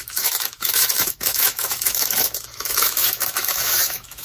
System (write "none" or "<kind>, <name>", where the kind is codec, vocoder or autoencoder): autoencoder, DAC-VAE